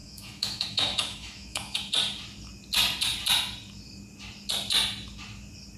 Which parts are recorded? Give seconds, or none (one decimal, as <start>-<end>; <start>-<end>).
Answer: 1.9-5.8